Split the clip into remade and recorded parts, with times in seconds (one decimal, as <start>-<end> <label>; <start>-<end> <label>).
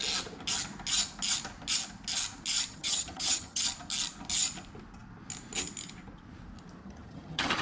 0.0-2.7 recorded; 2.7-3.6 remade; 3.6-6.8 recorded; 6.8-7.6 remade